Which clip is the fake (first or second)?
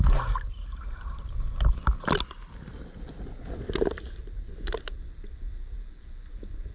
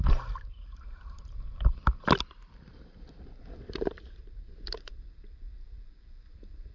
second